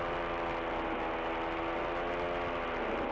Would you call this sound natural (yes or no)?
yes